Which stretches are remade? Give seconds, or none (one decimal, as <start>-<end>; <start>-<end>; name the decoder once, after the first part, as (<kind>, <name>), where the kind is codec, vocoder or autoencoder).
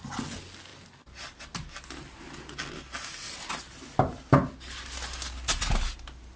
none